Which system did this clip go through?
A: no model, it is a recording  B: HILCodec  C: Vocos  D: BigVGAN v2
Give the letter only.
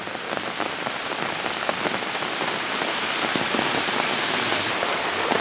A